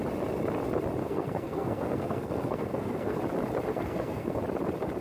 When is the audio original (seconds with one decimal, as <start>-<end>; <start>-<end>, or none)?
0.0-1.0; 3.2-3.7; 4.4-5.0